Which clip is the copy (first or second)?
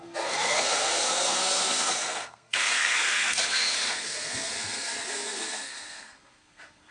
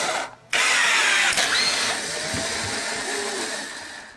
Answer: first